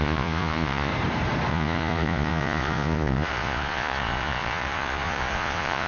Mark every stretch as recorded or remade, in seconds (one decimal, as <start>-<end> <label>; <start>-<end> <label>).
0.0-0.9 remade; 0.9-1.5 recorded; 1.5-5.9 remade